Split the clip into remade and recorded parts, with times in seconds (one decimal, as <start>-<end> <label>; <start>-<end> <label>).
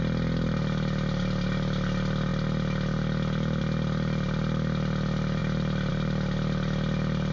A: 0.0-7.3 recorded